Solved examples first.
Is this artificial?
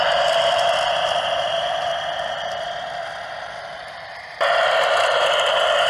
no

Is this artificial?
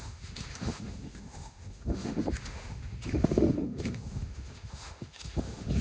yes